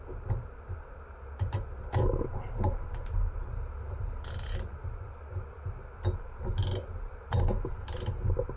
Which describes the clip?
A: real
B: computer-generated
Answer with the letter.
A